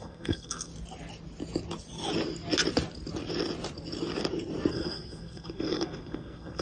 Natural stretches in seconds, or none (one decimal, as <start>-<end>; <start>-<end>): 0.7-4.7